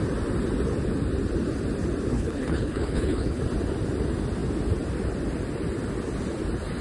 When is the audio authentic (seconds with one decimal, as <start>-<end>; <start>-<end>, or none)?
0.0-2.1; 3.4-6.8